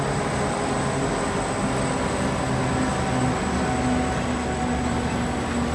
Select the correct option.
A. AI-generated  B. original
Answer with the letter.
B